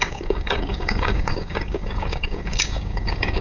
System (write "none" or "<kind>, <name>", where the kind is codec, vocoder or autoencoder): codec, DAC